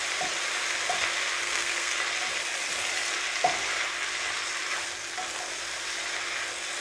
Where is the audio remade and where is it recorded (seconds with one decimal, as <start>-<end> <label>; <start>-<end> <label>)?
0.0-1.4 recorded; 1.4-2.0 remade; 2.0-6.8 recorded